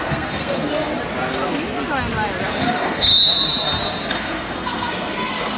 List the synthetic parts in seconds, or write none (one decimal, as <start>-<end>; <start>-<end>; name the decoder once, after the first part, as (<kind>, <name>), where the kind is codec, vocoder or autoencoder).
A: 0.0-0.9 (codec, SNAC); 2.6-3.1; 4.1-5.6

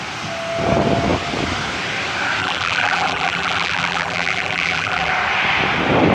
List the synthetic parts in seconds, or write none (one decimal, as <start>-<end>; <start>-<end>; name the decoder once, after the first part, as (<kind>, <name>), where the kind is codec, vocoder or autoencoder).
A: 2.4-5.1 (vocoder, BigVGAN v2)

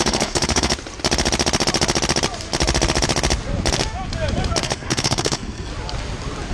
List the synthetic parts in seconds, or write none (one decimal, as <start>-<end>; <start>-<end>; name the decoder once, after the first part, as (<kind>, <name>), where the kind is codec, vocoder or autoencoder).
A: 0.0-0.7 (codec, SNAC); 4.6-5.7

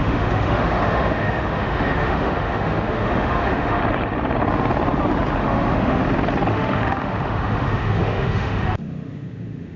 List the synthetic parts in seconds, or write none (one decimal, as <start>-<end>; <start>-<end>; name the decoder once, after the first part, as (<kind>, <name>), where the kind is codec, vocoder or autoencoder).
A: 0.0-3.8 (autoencoder, DAC-VAE); 5.4-6.0; 6.5-9.8